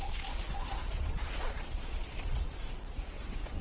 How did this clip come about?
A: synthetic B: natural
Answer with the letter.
A